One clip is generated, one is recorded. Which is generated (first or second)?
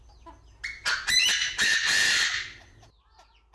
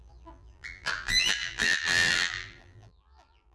second